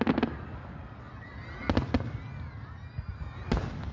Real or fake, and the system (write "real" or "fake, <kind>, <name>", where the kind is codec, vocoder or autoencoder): real